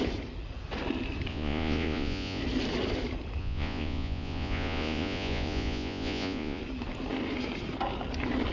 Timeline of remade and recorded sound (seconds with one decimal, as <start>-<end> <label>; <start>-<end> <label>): 0.0-1.3 recorded; 1.3-2.4 remade; 2.4-3.4 recorded; 3.4-6.6 remade; 6.6-8.5 recorded